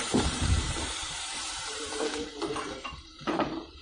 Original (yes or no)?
no